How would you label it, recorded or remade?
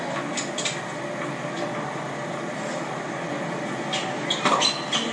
recorded